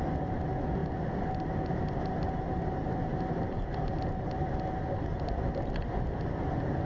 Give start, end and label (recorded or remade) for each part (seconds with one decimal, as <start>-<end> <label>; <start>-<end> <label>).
0.0-6.9 recorded